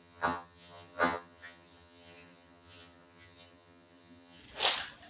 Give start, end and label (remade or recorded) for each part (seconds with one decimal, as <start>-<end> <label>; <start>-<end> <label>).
0.0-4.4 remade; 4.4-5.1 recorded